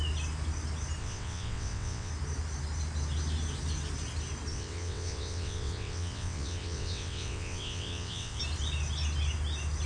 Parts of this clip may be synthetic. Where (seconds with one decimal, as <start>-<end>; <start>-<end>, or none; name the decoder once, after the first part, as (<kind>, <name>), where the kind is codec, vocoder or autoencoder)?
1.0-2.1 (vocoder, WaveNeXt); 4.5-8.4